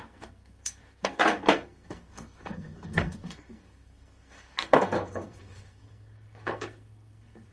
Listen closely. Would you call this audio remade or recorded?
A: remade